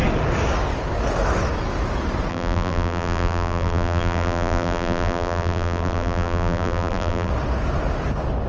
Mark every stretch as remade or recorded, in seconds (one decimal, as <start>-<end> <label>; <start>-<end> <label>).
0.0-2.3 recorded; 2.3-7.3 remade; 7.3-8.5 recorded